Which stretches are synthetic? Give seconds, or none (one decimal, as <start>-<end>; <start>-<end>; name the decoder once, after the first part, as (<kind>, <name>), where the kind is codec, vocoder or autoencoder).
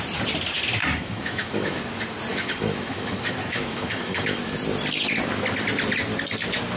0.8-1.8 (autoencoder, DAC-VAE); 2.3-4.4